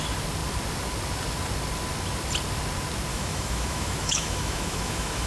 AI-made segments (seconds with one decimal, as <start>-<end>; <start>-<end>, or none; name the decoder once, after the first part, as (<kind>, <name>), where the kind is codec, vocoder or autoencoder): 3.1-5.3 (autoencoder, DAC-VAE)